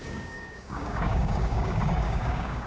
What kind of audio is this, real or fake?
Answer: fake